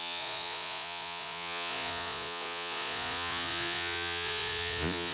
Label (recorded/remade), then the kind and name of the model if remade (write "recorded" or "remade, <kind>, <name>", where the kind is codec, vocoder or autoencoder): remade, vocoder, Vocos